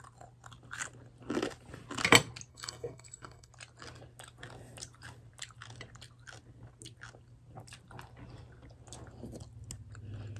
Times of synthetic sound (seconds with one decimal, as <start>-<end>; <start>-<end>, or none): 2.5-3.5